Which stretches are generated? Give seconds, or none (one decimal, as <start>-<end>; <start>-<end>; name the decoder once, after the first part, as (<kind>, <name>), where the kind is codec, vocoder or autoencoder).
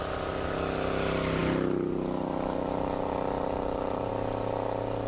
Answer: none